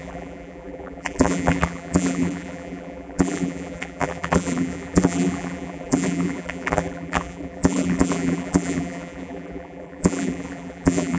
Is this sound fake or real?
fake